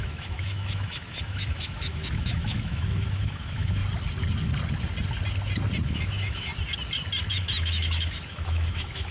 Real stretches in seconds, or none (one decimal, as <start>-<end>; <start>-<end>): 3.8-5.9; 6.5-7.3